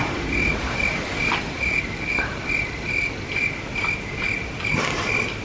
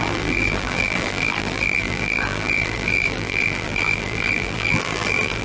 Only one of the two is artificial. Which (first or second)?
second